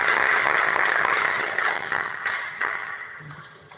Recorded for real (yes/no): no